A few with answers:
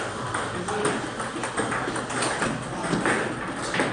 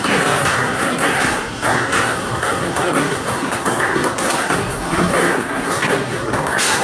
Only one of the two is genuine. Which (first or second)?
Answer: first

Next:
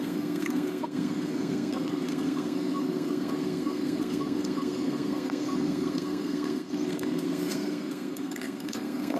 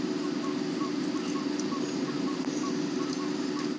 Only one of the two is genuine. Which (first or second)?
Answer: second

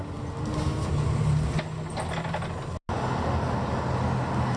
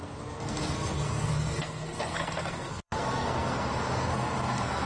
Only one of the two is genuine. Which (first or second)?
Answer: first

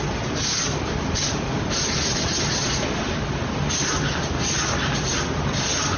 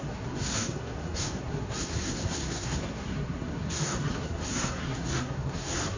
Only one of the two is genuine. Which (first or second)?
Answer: first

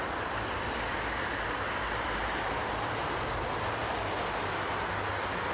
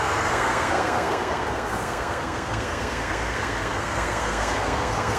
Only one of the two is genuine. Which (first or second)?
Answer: first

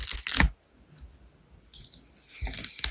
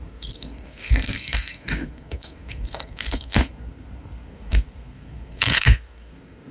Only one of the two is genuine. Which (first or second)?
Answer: first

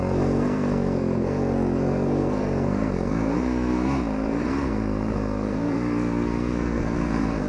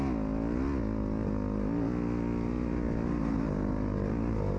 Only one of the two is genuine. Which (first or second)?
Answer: second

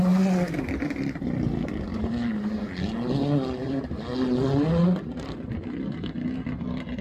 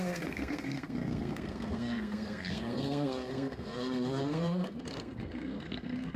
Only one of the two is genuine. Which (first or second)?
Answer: first